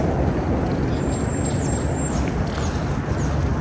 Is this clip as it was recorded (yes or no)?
yes